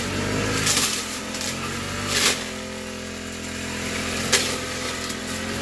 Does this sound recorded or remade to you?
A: recorded